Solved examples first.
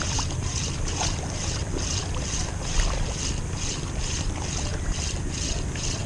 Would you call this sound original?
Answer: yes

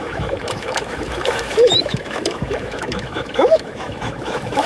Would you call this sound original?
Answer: no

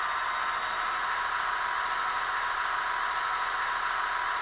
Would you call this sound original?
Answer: yes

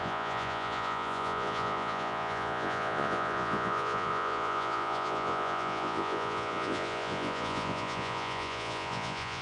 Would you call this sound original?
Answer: no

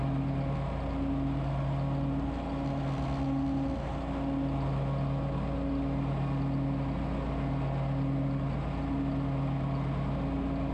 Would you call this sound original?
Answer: yes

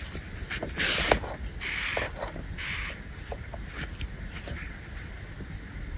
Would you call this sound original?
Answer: yes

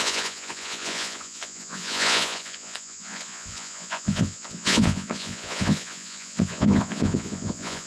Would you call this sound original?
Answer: no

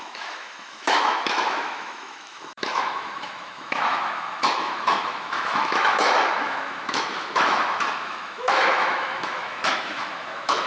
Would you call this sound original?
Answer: no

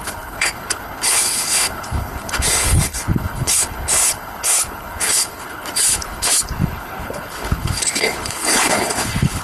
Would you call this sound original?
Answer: no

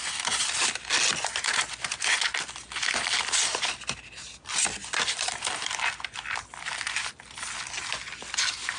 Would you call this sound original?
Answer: yes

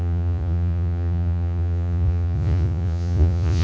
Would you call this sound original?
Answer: no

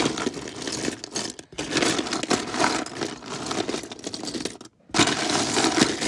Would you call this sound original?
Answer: yes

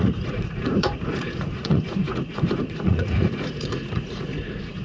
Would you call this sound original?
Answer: no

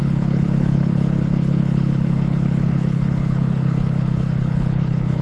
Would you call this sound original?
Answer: no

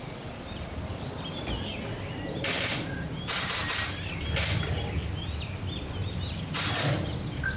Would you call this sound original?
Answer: yes